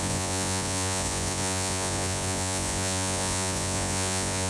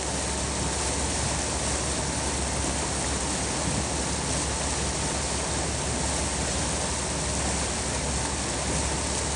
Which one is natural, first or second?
second